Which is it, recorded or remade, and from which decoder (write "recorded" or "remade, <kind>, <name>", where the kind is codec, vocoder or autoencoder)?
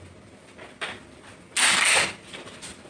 recorded